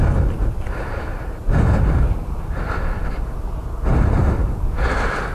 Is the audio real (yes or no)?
yes